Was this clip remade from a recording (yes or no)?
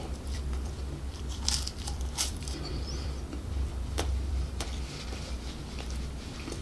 yes